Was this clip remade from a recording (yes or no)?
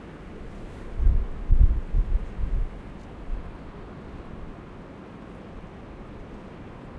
no